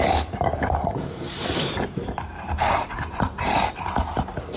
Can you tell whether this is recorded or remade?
remade